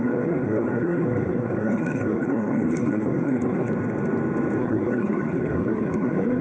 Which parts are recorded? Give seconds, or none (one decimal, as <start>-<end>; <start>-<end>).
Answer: 3.7-4.6